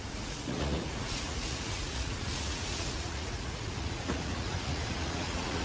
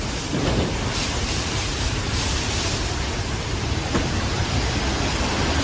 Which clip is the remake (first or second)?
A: first